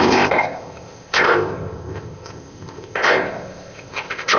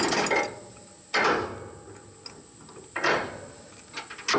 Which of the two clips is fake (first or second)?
first